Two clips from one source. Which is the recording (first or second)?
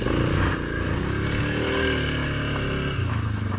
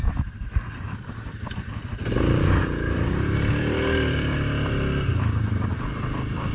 first